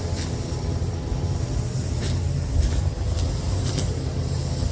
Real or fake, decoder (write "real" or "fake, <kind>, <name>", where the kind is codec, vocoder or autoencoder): fake, vocoder, BigVGAN v2